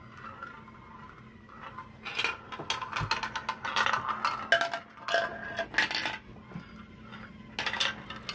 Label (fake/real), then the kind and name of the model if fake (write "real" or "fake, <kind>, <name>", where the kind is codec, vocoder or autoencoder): real